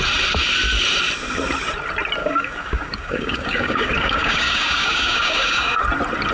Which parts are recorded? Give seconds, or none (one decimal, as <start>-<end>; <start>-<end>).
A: 0.0-2.2; 5.8-6.3